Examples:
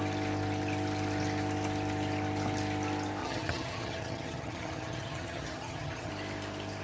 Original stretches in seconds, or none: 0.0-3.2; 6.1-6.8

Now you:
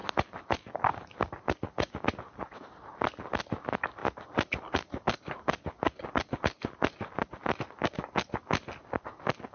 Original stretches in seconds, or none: 0.0-9.5